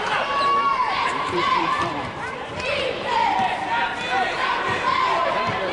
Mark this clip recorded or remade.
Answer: remade